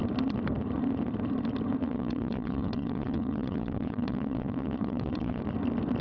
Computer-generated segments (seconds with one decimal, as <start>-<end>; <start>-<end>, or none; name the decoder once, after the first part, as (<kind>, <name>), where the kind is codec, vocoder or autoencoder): 1.8-5.4 (vocoder, WaveNeXt)